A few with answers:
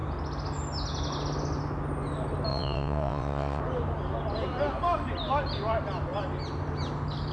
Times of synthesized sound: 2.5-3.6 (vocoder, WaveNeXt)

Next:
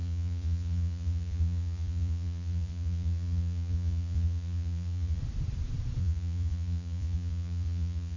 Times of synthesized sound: 0.0-5.2 (vocoder, Vocos); 6.0-8.2

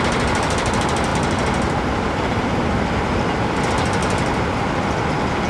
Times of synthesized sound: none

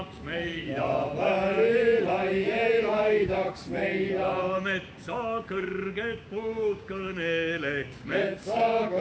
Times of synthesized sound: 0.0-0.7 (codec, DAC); 2.8-3.6; 5.0-9.0